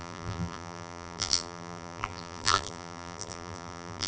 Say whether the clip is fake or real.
fake